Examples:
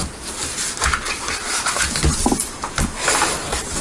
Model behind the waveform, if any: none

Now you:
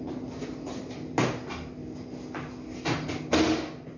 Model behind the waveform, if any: none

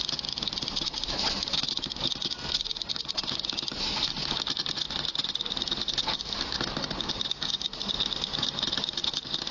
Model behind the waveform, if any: none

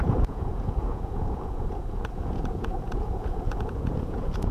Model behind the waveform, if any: vocoder, Vocos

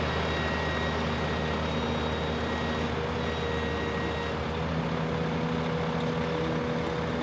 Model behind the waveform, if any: none